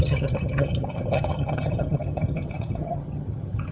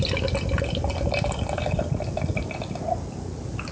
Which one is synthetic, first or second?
first